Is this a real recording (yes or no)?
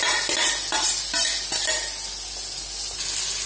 yes